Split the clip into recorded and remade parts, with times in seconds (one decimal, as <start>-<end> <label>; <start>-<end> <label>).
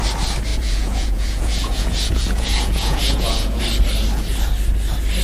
0.0-0.5 recorded; 0.5-3.6 remade; 3.6-5.2 recorded